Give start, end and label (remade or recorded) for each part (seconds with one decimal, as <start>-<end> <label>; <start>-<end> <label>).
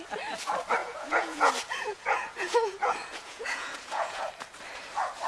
0.0-0.8 recorded; 0.8-1.5 remade; 1.5-1.9 recorded; 1.9-4.3 remade; 4.3-5.3 recorded